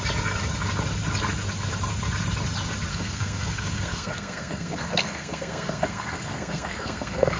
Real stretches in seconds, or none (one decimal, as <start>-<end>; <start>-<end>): 0.0-2.9